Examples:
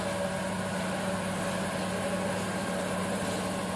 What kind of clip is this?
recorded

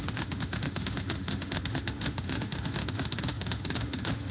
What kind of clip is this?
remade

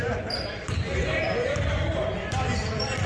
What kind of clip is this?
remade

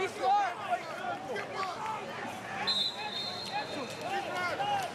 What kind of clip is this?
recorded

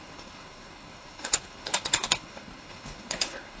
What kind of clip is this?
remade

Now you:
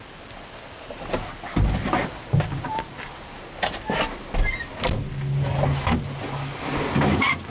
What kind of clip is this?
recorded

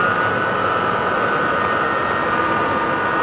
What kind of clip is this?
recorded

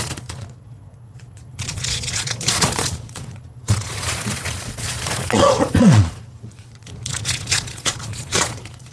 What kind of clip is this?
remade